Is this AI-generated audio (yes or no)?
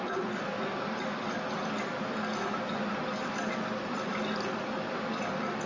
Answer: no